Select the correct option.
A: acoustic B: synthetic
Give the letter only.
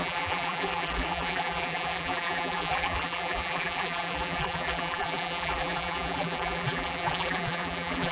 B